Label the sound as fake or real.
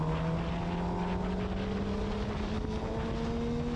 real